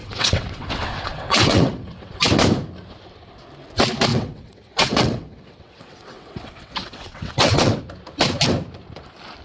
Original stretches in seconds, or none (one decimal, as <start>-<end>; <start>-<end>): 2.2-4.1; 7.8-9.4